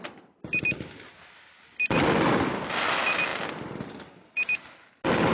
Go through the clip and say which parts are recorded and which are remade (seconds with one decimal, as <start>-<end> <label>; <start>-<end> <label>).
0.0-5.3 recorded